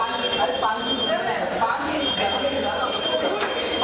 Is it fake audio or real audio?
real